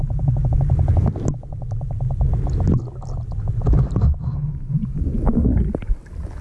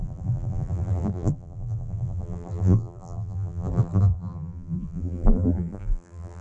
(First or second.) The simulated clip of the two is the second